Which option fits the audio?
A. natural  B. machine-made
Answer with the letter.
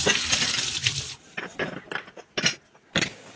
A